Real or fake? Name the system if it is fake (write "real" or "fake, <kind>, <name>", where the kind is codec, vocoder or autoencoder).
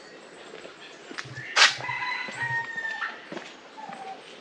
real